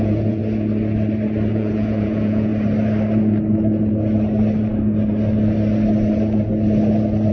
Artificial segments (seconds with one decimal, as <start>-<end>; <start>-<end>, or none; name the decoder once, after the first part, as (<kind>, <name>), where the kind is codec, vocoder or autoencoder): 0.0-0.4 (vocoder, Vocos); 1.5-2.5